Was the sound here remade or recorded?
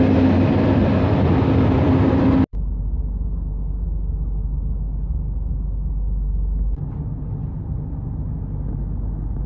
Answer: recorded